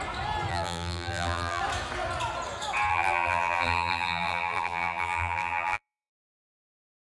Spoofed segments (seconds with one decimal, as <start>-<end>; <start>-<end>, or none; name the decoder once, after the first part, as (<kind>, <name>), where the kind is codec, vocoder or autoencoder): 0.5-1.6 (vocoder, BigVGAN v2); 2.9-6.1